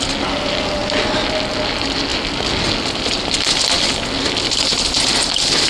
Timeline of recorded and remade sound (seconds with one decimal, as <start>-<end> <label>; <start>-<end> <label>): 0.0-5.7 recorded

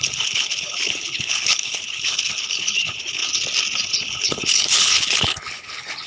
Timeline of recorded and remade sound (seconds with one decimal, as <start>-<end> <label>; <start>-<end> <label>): 0.0-3.2 remade; 3.2-3.9 recorded; 3.9-6.1 remade